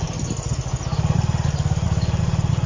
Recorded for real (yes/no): yes